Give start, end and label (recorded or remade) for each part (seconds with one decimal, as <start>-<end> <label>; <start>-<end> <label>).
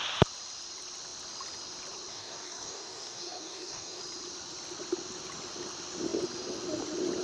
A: 0.0-2.1 recorded; 2.1-4.0 remade; 4.0-7.2 recorded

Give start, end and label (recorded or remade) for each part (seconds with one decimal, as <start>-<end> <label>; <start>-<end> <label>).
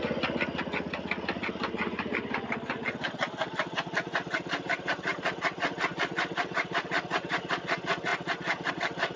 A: 0.0-9.2 recorded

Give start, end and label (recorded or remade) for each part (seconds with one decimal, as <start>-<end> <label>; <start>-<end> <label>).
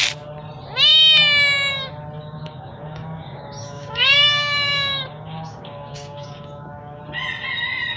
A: 0.0-2.2 recorded; 2.2-7.0 remade; 7.0-8.0 recorded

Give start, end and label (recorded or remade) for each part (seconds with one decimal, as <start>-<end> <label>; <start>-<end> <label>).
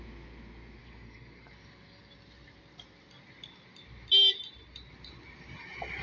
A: 0.0-0.8 recorded; 0.8-2.0 remade; 2.0-6.0 recorded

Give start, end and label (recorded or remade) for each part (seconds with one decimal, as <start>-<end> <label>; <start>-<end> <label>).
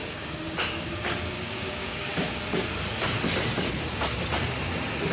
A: 0.0-2.5 remade; 2.5-5.1 recorded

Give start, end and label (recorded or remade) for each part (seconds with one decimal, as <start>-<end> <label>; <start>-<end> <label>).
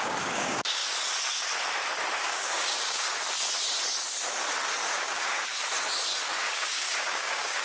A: 0.0-0.8 remade; 0.8-2.2 recorded; 2.2-3.1 remade; 3.1-4.9 recorded; 4.9-5.5 remade; 5.5-6.4 recorded; 6.4-7.6 remade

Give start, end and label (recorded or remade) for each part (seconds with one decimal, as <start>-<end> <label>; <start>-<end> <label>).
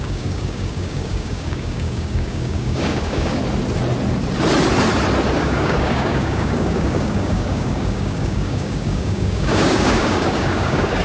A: 0.0-3.4 remade; 3.4-5.4 recorded; 5.4-11.0 remade